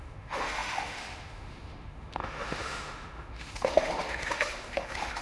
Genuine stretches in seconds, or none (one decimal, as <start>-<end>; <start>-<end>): none